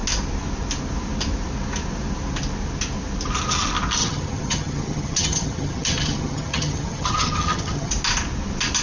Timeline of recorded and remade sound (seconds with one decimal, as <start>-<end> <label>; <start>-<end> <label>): 0.0-4.0 recorded; 4.0-7.9 remade; 7.9-8.8 recorded